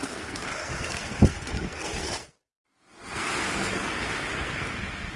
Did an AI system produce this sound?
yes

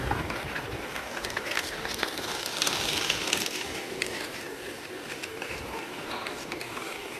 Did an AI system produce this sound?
yes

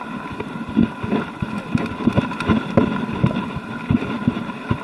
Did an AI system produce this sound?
no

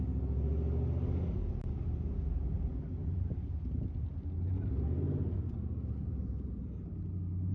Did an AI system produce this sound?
no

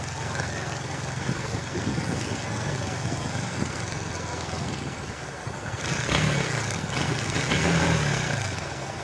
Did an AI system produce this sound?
yes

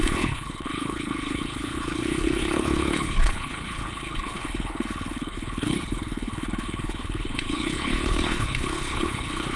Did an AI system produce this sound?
yes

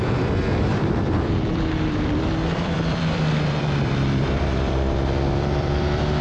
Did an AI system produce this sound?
yes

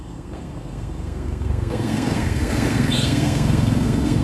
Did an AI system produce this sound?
yes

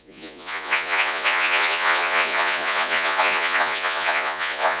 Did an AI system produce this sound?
yes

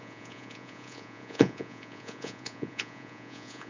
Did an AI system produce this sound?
yes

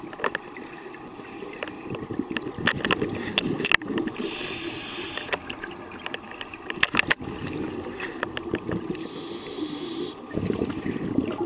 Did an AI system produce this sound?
no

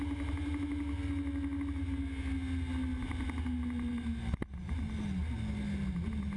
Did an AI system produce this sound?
no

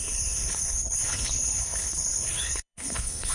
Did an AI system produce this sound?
yes